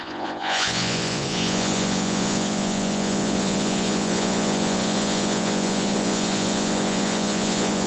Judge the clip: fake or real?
fake